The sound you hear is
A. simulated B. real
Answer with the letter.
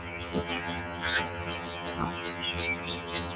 A